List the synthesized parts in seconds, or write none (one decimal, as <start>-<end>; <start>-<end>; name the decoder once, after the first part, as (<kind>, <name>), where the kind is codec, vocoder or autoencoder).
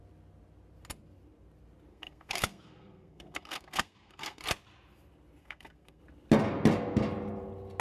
1.9-4.4 (codec, SNAC); 5.4-6.0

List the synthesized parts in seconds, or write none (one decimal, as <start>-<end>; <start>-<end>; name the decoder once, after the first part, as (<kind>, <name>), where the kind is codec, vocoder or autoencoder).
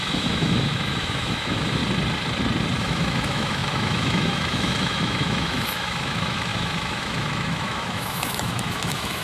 0.0-1.8 (autoencoder, DAC-VAE); 2.8-9.2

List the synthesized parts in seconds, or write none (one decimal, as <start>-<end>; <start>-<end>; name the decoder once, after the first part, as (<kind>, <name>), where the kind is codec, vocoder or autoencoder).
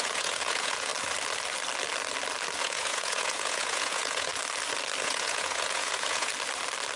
0.0-0.9 (vocoder, Vocos); 2.6-4.3; 5.0-6.3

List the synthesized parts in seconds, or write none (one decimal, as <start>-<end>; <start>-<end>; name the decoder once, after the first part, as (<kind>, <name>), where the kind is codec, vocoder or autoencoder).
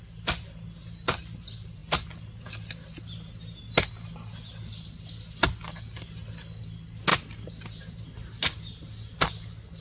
none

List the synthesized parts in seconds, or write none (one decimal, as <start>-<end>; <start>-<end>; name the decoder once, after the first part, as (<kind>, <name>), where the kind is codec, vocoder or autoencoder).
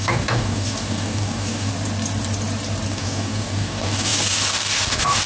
0.0-1.7 (codec, DAC); 2.9-5.3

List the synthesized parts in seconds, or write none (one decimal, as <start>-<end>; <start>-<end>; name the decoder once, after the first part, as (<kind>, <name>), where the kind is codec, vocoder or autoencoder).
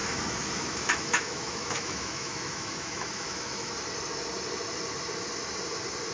0.0-3.7 (autoencoder, DAC-VAE)